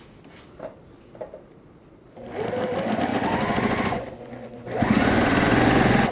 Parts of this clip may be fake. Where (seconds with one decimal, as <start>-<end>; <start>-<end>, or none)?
3.1-6.1